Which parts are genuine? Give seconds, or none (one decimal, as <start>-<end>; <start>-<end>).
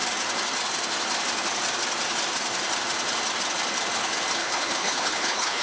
0.0-4.4